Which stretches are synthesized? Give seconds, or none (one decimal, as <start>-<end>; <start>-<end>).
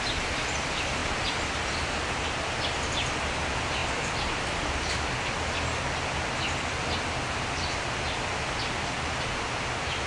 none